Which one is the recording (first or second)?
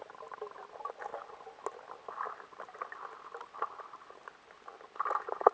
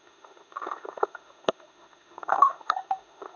first